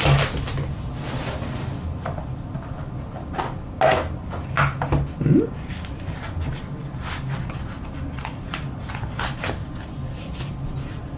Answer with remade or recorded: recorded